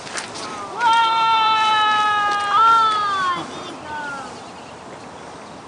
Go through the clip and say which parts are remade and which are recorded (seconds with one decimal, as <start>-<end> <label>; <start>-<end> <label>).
0.0-1.0 recorded; 1.0-1.7 remade; 1.7-5.7 recorded